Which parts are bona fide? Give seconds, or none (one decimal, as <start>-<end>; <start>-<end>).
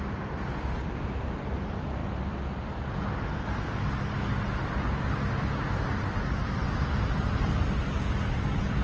2.0-5.8; 6.6-7.6